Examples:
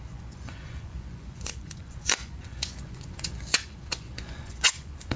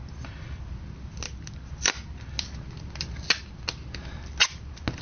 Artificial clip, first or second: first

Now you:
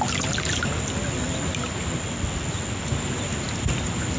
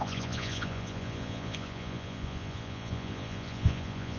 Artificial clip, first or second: second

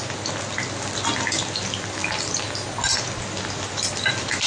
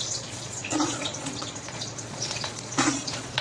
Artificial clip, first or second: second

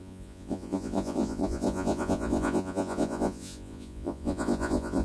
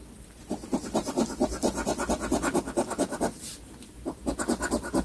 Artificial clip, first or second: first